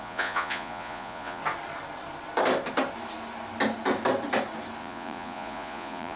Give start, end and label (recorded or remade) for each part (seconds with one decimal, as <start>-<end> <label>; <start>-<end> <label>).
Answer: 0.0-1.4 remade; 1.4-4.8 recorded; 4.8-6.2 remade